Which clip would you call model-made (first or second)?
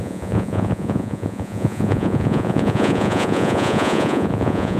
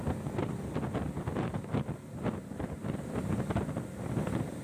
first